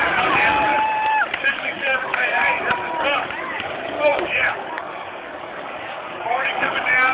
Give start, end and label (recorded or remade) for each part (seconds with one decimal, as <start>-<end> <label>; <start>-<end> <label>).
0.0-0.7 remade; 0.7-1.5 recorded; 1.5-2.5 remade; 2.5-3.4 recorded; 3.4-7.1 remade